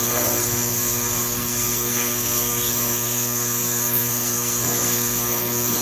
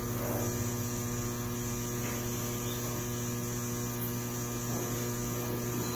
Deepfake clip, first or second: first